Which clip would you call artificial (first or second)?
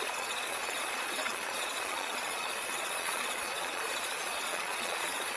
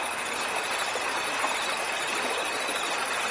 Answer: first